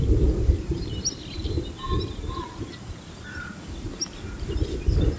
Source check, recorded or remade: recorded